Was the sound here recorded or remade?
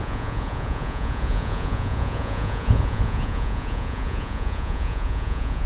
remade